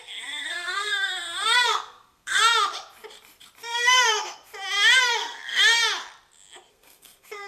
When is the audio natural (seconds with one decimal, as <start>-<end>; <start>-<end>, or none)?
2.4-3.6; 4.5-5.0; 5.8-6.7